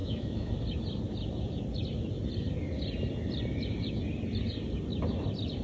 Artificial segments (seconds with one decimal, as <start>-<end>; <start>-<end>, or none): 0.0-0.6